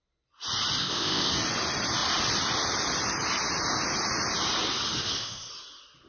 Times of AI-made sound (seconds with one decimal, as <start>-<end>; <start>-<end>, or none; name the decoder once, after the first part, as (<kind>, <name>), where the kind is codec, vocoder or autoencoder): 0.8-1.3 (codec, ZipCodec); 5.0-5.5